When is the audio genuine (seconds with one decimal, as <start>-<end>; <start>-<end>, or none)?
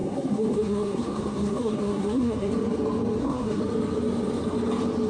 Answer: 2.5-3.2; 3.6-5.1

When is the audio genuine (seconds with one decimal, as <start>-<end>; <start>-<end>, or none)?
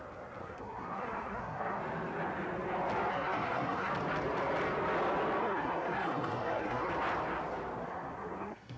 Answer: 0.0-0.4; 1.8-3.1; 3.9-5.4; 6.9-7.8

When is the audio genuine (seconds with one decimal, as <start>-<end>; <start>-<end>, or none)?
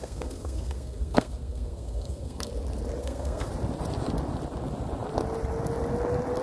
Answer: 2.5-3.0; 3.5-6.4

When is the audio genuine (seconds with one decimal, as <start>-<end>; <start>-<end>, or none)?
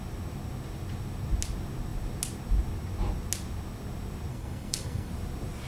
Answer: 0.0-4.3; 5.1-5.7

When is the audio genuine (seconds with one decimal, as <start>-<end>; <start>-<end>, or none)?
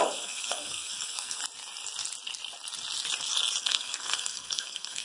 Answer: 1.4-3.6